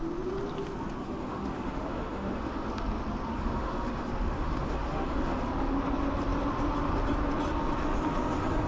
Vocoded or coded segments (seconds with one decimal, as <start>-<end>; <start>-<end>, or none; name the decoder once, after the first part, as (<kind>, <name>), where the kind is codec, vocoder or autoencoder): 1.0-2.7 (autoencoder, DAC-VAE); 3.3-5.4